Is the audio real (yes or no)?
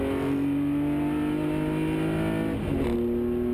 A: yes